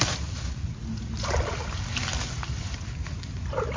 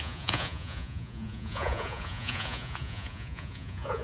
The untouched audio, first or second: first